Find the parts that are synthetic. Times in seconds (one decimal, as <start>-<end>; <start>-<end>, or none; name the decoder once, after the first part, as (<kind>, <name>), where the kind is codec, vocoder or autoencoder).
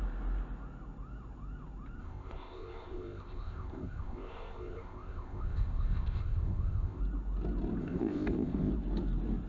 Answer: 2.0-7.0 (codec, ZipCodec); 7.8-8.7